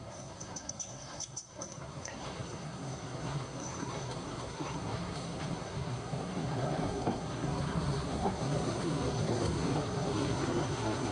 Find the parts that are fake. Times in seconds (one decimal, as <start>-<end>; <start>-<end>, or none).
0.0-11.1